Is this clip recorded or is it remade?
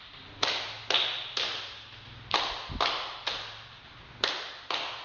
recorded